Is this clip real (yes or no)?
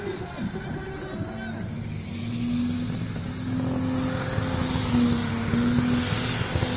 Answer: yes